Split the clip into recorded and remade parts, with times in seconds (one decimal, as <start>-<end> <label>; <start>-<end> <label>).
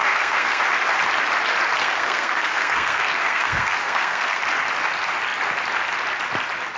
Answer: 0.0-0.6 remade; 0.6-1.8 recorded; 1.8-4.4 remade; 4.4-6.8 recorded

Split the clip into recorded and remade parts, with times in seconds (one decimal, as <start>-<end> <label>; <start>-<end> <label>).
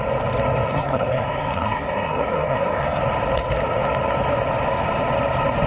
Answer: 0.0-0.7 recorded; 0.7-3.0 remade; 3.0-5.7 recorded